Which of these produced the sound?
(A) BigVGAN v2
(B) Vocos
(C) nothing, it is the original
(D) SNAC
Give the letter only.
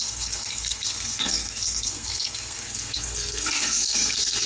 D